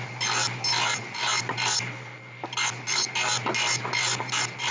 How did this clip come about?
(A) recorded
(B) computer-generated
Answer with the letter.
A